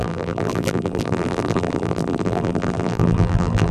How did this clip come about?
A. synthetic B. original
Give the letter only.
A